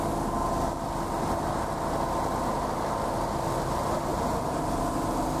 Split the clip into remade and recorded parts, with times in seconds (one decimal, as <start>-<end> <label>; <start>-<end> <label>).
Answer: 0.0-4.1 recorded; 4.1-4.8 remade; 4.8-5.4 recorded